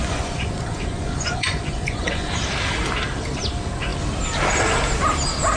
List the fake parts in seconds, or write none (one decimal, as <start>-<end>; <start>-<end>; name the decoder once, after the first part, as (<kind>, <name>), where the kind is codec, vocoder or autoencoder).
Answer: 0.0-2.3 (vocoder, Vocos)